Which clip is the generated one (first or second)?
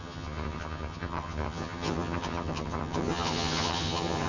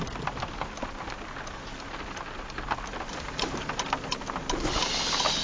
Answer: first